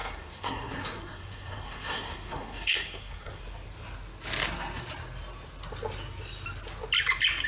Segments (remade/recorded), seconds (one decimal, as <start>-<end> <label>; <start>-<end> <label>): 0.0-3.4 remade; 3.4-7.5 recorded